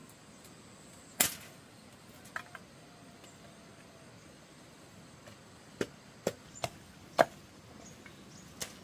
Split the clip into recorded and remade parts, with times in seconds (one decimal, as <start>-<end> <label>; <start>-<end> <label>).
0.0-0.5 remade; 0.5-8.8 recorded